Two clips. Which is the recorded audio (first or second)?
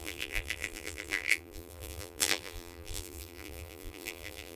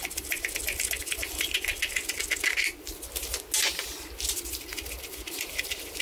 second